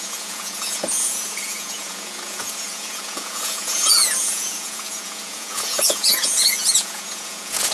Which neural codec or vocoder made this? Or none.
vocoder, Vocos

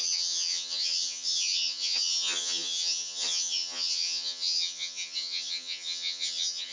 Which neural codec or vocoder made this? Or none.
vocoder, HiFi-GAN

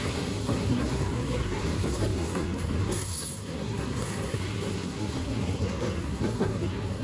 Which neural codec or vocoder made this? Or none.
codec, SNAC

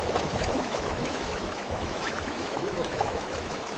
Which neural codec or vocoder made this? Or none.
autoencoder, DAC-VAE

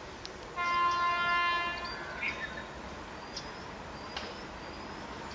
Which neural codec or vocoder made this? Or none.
none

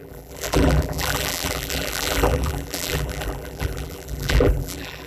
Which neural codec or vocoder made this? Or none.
vocoder, BigVGAN v2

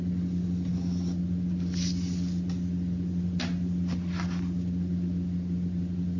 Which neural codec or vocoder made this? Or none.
none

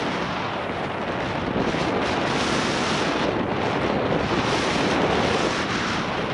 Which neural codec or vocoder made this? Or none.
none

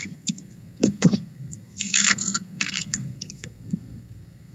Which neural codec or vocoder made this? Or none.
codec, SNAC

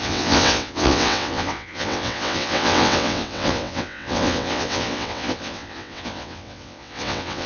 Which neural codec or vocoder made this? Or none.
vocoder, WaveNeXt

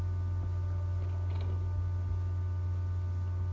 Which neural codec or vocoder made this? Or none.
none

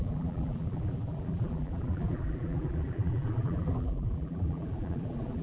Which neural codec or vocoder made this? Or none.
vocoder, BigVGAN v2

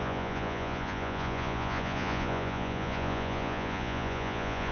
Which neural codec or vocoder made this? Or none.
vocoder, Vocos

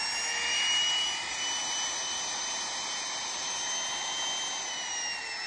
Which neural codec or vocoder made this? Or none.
none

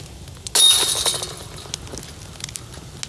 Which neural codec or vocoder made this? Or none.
none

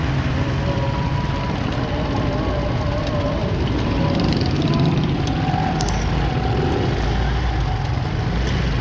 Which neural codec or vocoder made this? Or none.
none